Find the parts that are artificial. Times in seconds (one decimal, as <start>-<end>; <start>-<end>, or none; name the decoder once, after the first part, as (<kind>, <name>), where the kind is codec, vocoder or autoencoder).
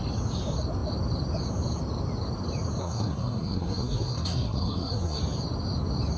2.8-5.2 (codec, SNAC)